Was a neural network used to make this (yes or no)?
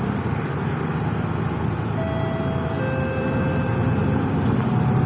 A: no